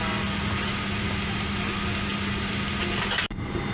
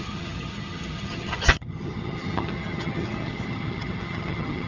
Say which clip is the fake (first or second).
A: second